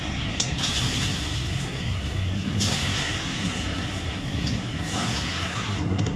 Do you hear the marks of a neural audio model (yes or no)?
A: yes